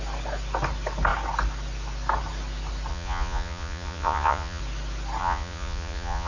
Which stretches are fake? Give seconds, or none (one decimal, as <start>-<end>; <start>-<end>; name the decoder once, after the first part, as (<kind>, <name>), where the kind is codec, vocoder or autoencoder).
2.9-4.6 (vocoder, Vocos); 5.2-6.3